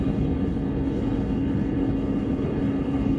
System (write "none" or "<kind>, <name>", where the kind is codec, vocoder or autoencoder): codec, HILCodec